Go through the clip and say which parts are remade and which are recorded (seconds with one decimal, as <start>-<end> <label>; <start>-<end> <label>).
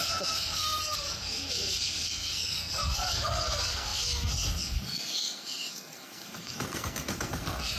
0.0-7.8 remade